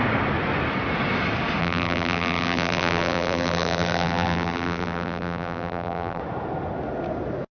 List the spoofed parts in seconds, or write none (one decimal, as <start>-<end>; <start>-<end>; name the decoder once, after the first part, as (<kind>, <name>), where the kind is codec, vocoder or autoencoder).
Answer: 1.6-6.2 (vocoder, BigVGAN v2)